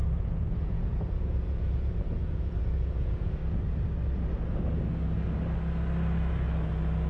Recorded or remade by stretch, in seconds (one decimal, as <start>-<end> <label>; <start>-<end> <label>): 0.0-3.4 remade; 3.4-7.1 recorded